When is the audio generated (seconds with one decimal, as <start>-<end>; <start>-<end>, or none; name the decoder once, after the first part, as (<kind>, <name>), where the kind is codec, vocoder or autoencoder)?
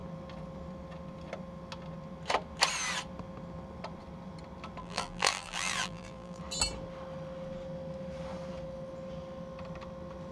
4.8-6.4 (vocoder, BigVGAN v2)